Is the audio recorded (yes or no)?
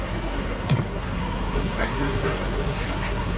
no